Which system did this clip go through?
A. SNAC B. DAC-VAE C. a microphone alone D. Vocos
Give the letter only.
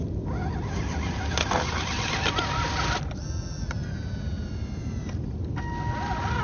C